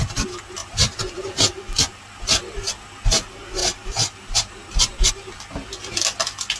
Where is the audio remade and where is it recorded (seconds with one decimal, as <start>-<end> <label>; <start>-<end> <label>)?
0.0-0.6 recorded; 0.6-1.6 remade; 1.6-3.6 recorded; 3.6-5.1 remade; 5.1-6.6 recorded